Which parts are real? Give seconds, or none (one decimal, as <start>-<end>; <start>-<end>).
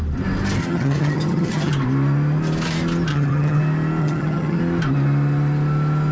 0.0-0.6; 1.7-3.1; 3.6-4.0; 4.6-6.1